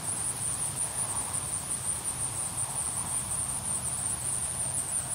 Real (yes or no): yes